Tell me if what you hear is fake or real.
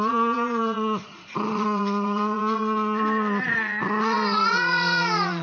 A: fake